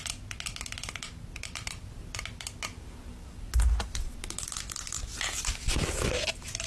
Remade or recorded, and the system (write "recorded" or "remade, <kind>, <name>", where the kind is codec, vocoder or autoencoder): recorded